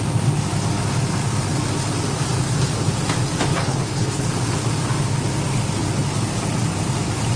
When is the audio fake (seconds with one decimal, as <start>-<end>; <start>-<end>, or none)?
3.5-4.3